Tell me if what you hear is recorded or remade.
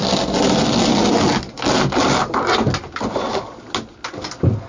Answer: recorded